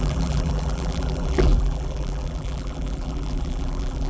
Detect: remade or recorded remade